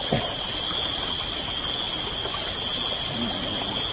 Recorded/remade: recorded